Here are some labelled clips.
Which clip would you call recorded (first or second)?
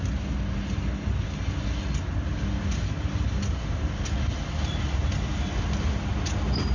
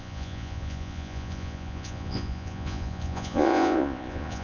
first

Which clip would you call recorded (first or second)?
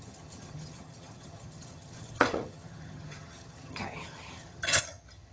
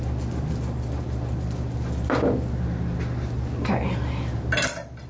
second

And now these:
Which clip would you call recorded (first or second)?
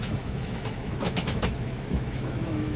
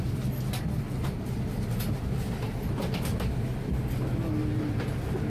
second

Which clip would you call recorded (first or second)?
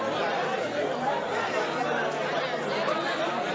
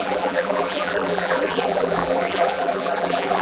first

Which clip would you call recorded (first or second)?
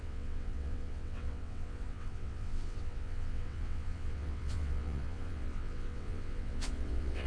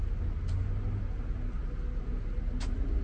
second